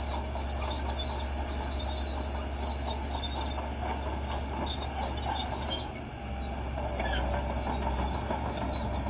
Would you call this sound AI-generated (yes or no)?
no